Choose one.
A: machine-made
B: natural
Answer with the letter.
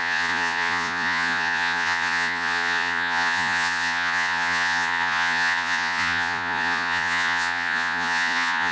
A